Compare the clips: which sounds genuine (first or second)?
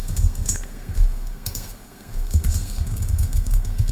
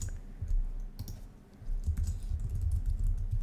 second